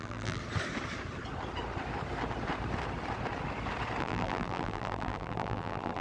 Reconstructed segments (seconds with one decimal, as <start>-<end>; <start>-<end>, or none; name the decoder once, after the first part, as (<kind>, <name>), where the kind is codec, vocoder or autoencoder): 0.0-0.4 (vocoder, BigVGAN v2); 4.0-6.0